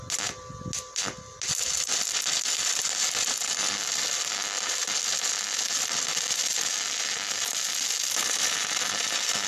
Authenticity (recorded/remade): recorded